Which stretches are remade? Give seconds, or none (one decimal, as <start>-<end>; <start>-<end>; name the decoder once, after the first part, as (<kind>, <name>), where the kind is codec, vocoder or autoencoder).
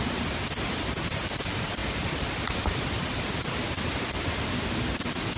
none